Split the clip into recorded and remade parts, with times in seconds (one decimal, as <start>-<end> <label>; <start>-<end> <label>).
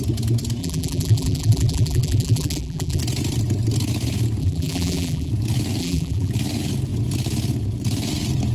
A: 0.0-0.6 recorded; 0.6-3.0 remade; 3.0-4.4 recorded; 4.4-5.3 remade; 5.3-5.8 recorded; 5.8-6.3 remade; 6.3-8.5 recorded